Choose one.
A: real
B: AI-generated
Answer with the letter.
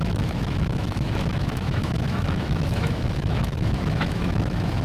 B